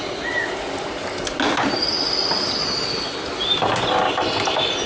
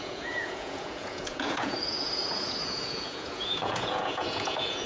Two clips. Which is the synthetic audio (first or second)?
second